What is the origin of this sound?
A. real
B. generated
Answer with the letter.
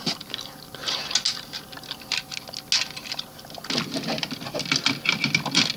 A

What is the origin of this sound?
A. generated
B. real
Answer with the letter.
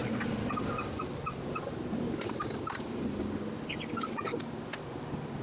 B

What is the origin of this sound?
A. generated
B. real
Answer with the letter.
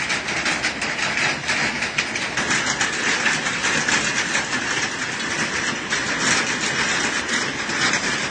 B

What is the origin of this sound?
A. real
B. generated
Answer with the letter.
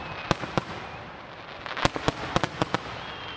A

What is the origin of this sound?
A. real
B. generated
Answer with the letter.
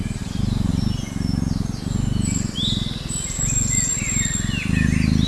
A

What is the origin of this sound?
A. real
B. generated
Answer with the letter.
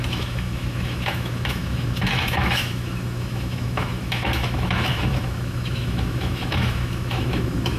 B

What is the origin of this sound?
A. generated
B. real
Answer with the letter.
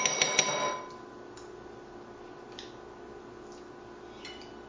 B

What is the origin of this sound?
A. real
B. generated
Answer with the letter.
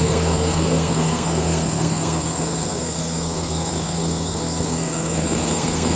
B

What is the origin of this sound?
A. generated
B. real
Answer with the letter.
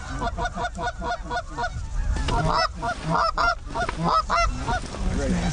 B